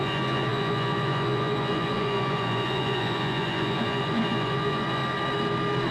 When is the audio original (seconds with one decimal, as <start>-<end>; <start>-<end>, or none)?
5.0-5.9